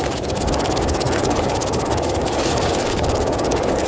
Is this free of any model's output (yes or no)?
no